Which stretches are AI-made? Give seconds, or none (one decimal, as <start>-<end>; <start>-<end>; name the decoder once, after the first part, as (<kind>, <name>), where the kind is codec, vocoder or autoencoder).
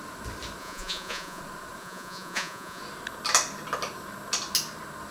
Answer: 0.6-1.4 (vocoder, Vocos); 1.8-2.8